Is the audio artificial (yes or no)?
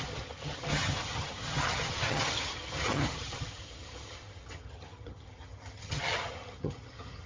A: yes